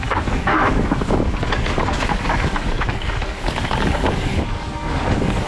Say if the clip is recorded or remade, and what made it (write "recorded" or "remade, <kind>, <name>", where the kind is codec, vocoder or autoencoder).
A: remade, codec, DAC